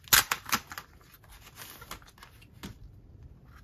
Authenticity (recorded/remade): recorded